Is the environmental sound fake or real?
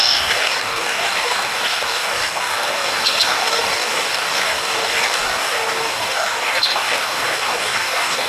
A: fake